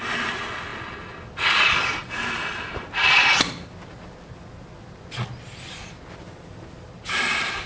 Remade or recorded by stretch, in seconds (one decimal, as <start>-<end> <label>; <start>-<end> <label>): 0.0-7.7 recorded